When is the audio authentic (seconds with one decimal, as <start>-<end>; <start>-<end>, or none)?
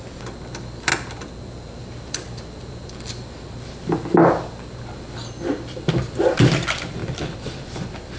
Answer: 0.9-1.8